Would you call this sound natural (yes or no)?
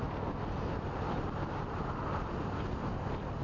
yes